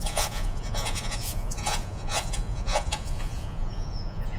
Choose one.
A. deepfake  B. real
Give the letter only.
A